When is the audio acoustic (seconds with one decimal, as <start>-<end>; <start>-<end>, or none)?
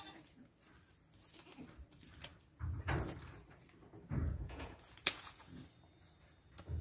0.0-4.2; 5.6-6.8